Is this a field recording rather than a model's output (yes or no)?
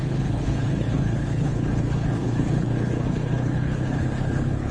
no